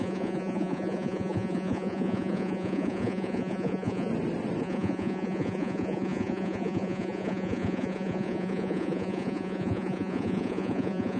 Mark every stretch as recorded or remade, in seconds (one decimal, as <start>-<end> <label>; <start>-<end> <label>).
0.0-4.1 remade; 4.1-4.6 recorded; 4.6-11.2 remade